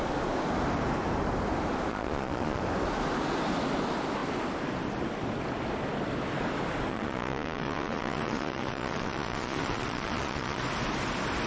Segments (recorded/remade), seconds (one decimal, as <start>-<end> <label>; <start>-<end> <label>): 0.0-1.9 recorded; 1.9-2.6 remade; 2.6-6.9 recorded; 6.9-10.6 remade; 10.6-11.5 recorded

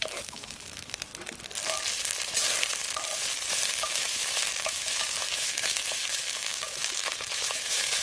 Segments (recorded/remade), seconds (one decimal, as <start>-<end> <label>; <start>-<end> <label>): 0.0-1.1 remade; 1.1-3.7 recorded; 3.7-8.0 remade